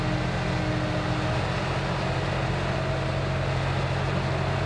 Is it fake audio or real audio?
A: real